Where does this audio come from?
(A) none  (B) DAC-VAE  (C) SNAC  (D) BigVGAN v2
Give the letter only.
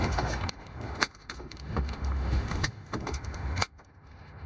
B